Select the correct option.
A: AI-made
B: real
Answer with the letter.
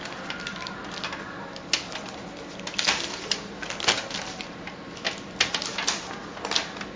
B